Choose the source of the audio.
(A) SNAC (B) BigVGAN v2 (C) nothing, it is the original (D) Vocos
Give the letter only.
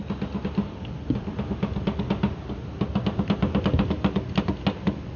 C